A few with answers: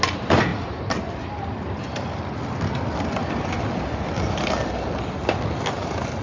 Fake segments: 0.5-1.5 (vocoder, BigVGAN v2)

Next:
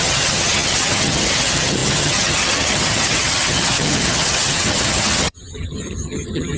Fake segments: 0.0-6.6 (vocoder, HiFi-GAN)

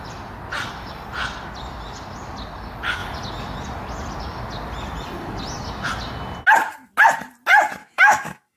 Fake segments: 7.8-8.6 (autoencoder, DAC-VAE)

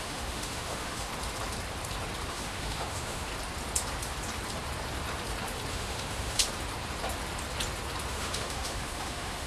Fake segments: 0.0-1.1 (autoencoder, DAC-VAE); 2.3-3.3; 5.7-6.4; 8.1-9.5